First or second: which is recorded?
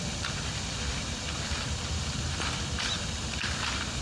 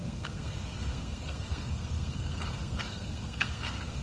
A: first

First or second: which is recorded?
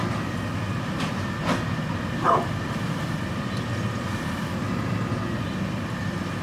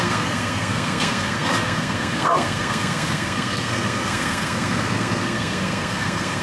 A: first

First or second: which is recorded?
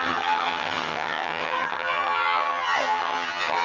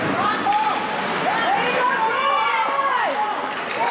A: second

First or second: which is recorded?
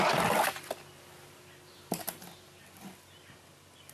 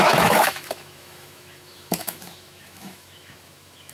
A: first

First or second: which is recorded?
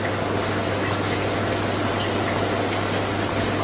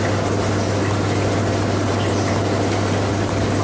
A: first